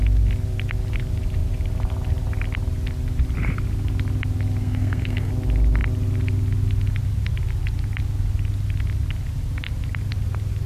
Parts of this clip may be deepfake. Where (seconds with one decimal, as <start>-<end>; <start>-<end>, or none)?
4.6-5.3

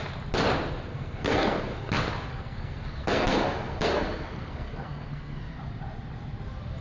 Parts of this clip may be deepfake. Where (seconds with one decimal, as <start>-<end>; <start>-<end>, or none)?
0.9-1.9; 2.3-5.6